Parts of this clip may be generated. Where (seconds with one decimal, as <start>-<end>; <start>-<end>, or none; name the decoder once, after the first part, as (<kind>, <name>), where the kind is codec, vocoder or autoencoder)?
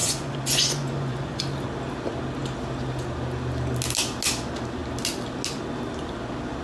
0.0-1.4 (vocoder, Vocos)